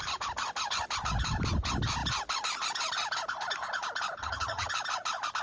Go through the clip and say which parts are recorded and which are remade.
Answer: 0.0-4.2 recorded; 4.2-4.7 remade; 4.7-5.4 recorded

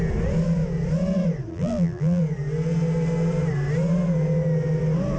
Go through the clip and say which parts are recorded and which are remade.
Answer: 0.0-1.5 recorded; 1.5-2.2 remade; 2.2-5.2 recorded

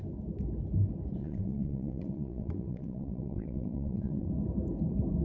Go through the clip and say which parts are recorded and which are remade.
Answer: 0.0-1.2 recorded; 1.2-4.3 remade; 4.3-5.2 recorded

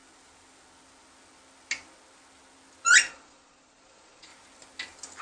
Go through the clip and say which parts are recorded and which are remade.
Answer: 0.0-3.1 recorded; 3.1-4.3 remade; 4.3-5.2 recorded

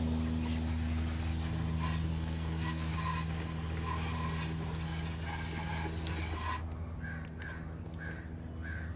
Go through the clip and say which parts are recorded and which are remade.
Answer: 0.0-2.1 recorded; 2.1-2.9 remade; 2.9-9.0 recorded

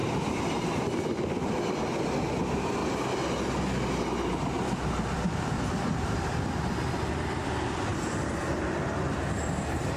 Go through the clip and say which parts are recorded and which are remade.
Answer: 0.0-2.2 recorded; 2.2-2.8 remade; 2.8-4.3 recorded; 4.3-7.9 remade; 7.9-8.4 recorded; 8.4-10.0 remade